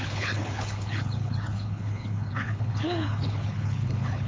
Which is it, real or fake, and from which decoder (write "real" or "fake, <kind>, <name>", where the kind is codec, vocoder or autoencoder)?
fake, codec, HILCodec